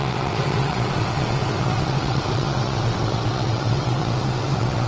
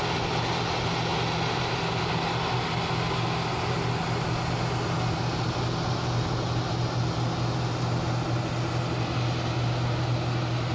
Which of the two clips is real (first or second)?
second